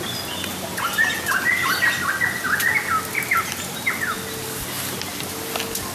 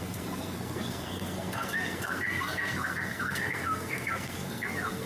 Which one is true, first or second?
first